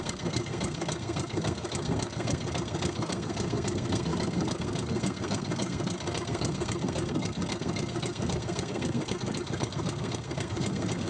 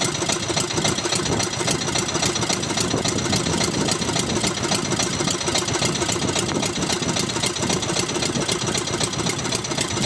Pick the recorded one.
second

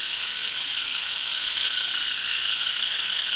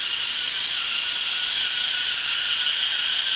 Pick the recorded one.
second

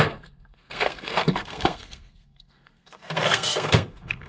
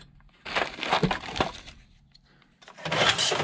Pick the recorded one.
second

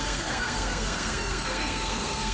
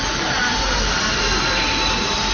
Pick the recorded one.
second